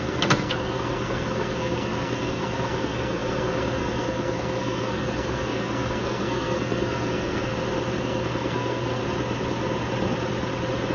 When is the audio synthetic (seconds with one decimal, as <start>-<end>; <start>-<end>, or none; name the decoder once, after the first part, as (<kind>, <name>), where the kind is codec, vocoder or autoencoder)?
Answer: 0.0-7.5 (codec, SNAC); 8.0-9.0